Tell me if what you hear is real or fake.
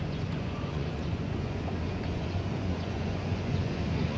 fake